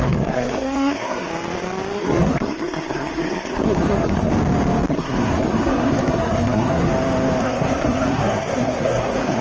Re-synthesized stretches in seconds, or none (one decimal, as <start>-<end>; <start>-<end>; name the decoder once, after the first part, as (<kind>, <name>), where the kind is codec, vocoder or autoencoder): 0.0-1.3 (codec, SNAC); 2.0-4.3; 4.9-6.9; 7.4-9.4